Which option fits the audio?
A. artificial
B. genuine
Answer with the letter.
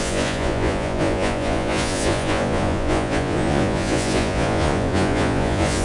A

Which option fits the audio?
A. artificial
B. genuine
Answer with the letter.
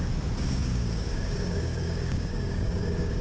A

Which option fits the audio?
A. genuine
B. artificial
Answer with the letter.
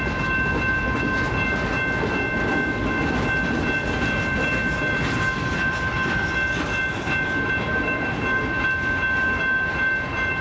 A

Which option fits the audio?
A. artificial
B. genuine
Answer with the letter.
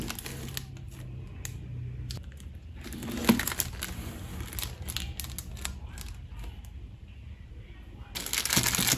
B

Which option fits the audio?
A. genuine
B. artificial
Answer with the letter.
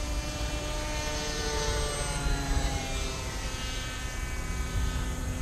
B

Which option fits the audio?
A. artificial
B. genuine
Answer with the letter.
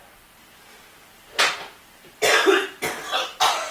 B